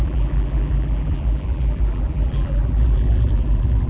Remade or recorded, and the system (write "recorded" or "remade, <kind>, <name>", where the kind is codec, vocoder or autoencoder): remade, vocoder, BigVGAN v2